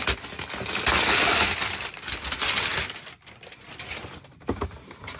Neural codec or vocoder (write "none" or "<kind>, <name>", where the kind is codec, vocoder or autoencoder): none